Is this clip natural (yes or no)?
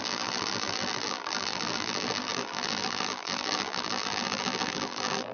no